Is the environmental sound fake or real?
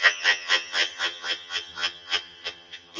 fake